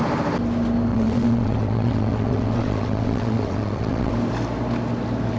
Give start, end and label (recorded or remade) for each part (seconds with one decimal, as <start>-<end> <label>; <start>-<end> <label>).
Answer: 0.0-0.9 recorded; 0.9-4.1 remade; 4.1-5.4 recorded